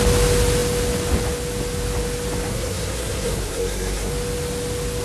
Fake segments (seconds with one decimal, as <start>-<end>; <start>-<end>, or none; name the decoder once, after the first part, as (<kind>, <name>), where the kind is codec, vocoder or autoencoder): 2.5-4.1 (codec, SNAC)